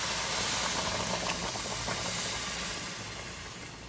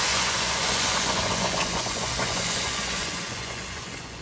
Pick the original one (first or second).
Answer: first